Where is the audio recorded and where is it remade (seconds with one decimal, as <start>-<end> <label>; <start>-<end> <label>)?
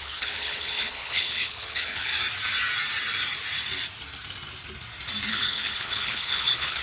0.0-2.1 remade; 2.1-5.3 recorded; 5.3-6.8 remade